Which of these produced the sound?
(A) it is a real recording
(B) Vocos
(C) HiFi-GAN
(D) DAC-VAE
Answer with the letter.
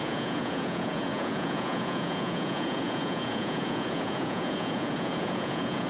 B